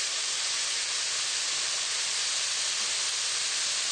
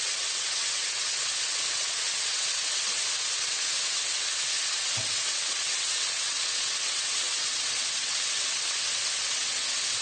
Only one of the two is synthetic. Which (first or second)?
second